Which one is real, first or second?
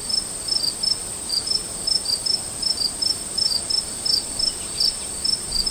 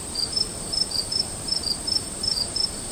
first